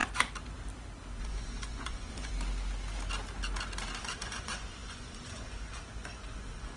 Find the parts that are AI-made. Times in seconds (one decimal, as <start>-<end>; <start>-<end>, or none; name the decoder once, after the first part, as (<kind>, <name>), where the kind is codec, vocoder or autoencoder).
1.2-2.3 (vocoder, Vocos); 4.0-6.8